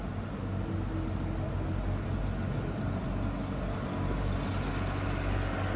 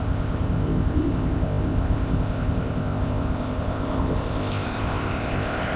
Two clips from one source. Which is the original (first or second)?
first